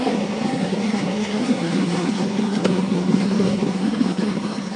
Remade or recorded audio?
remade